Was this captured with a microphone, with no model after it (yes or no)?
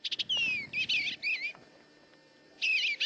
yes